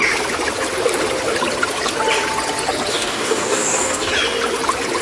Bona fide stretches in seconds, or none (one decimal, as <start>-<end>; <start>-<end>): 0.0-2.9; 4.1-5.0